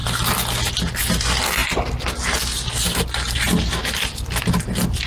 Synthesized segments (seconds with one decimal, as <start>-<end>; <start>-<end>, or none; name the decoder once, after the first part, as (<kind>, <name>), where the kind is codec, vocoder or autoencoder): none